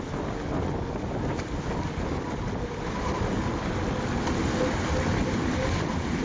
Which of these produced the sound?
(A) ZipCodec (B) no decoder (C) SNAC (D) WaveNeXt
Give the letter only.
B